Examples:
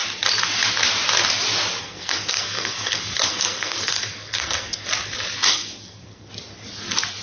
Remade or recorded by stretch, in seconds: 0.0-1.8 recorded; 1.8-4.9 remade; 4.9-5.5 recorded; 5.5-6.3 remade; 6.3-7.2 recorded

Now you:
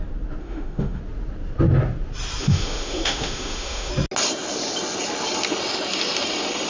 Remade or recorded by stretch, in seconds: 0.0-0.4 recorded; 0.4-1.0 remade; 1.0-2.4 recorded; 2.4-3.9 remade; 3.9-6.7 recorded

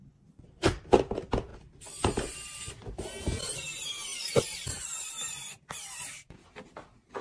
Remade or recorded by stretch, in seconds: 0.0-1.5 recorded; 1.5-2.7 remade; 2.7-4.1 recorded; 4.1-6.5 remade; 6.5-7.2 recorded

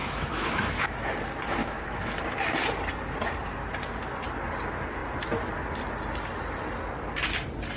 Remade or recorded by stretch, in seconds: 0.0-1.1 remade; 1.1-1.6 recorded; 1.6-2.1 remade; 2.1-7.8 recorded